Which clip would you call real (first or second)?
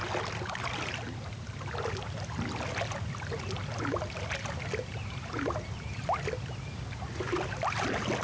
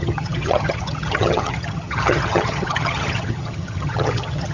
first